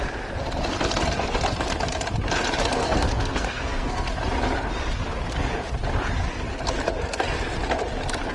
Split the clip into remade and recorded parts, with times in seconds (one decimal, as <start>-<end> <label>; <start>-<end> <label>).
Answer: 0.0-2.8 recorded; 2.8-4.1 remade; 4.1-8.3 recorded